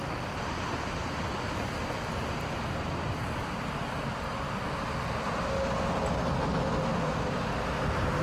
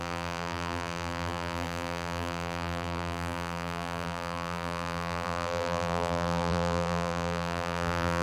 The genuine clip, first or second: first